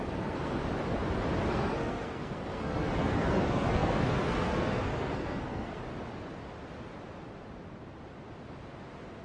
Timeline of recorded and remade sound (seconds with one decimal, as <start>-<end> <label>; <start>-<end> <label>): 0.0-0.6 remade; 0.6-1.5 recorded; 1.5-5.8 remade; 5.8-9.2 recorded